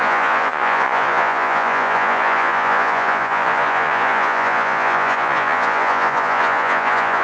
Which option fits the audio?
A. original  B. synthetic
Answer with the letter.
B